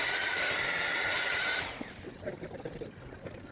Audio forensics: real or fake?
real